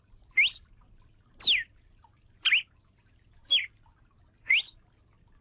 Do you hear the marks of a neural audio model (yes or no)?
no